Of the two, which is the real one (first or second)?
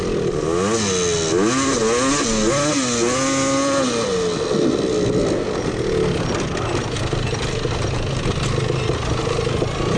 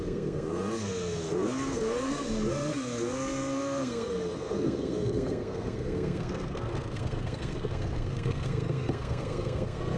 first